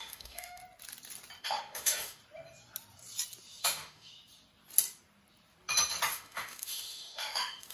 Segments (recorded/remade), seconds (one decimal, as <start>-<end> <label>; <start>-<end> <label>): 0.0-0.6 remade; 0.6-1.4 recorded; 1.4-2.2 remade; 2.2-3.6 recorded; 3.6-4.1 remade; 4.1-6.1 recorded; 6.1-7.7 remade